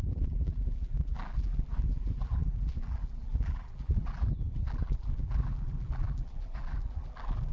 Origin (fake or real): fake